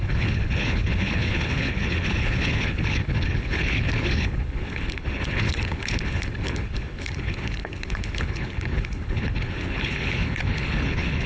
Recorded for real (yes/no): no